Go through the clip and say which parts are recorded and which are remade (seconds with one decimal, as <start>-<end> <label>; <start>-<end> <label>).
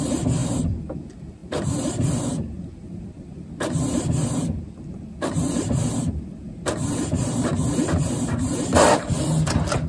0.0-7.5 remade; 7.5-8.4 recorded; 8.4-9.9 remade